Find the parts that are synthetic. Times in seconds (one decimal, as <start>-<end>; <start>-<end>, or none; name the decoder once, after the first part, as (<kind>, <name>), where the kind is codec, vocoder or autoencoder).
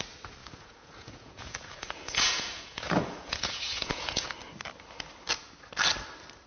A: 0.4-4.3 (vocoder, Vocos)